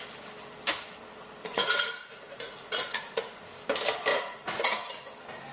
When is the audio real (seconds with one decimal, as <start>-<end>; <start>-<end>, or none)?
0.0-1.5; 3.4-4.1; 5.0-5.5